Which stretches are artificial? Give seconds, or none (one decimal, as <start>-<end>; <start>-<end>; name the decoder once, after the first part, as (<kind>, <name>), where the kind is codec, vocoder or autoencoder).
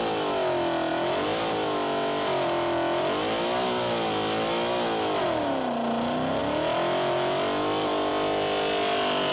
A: none